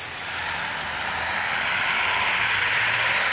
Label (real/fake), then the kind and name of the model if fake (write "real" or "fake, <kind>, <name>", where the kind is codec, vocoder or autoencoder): fake, vocoder, BigVGAN v2